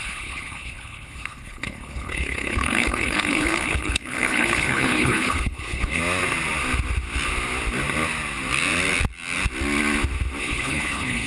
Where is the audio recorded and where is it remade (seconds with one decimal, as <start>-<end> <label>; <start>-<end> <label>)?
0.0-6.0 remade; 6.0-10.4 recorded; 10.4-11.3 remade